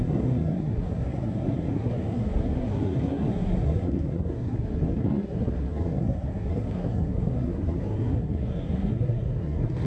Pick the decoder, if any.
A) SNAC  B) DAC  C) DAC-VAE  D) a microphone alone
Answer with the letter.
A